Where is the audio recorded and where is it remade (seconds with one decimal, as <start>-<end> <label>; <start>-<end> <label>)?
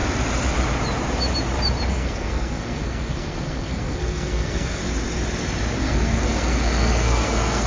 0.0-1.9 recorded; 1.9-4.8 remade; 4.8-5.8 recorded; 5.8-7.7 remade